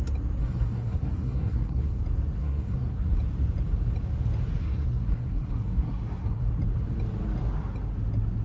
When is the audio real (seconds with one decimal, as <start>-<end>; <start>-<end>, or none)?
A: 0.0-0.4; 2.0-2.4; 3.2-4.6; 6.4-8.4